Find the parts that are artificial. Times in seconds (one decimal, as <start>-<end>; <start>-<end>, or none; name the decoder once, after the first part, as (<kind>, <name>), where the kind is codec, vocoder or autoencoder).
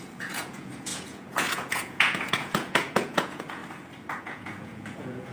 0.0-3.6 (vocoder, Vocos); 4.2-5.3